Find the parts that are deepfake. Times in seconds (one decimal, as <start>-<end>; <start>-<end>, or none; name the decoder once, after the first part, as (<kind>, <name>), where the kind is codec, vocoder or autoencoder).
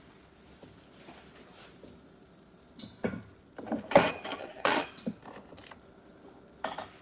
4.3-4.9 (vocoder, Vocos)